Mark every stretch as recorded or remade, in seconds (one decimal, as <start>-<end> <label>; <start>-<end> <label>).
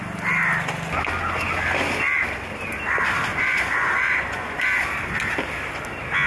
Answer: 0.0-3.3 recorded; 3.3-4.8 remade; 4.8-6.3 recorded